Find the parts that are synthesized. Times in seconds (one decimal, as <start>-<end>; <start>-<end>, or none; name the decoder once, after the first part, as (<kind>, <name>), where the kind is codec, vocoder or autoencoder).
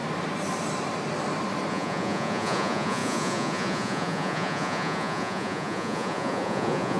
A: 1.7-7.0 (vocoder, Vocos)